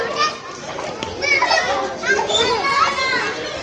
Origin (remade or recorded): recorded